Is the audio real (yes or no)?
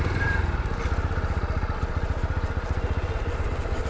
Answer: yes